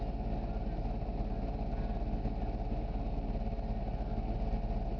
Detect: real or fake real